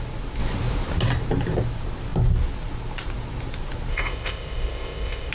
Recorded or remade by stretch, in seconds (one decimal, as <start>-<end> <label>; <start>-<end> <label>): 0.0-3.9 recorded; 3.9-5.3 remade